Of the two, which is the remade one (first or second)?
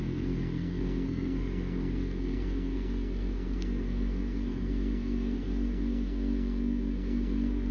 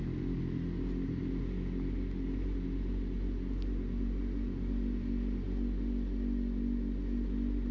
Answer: first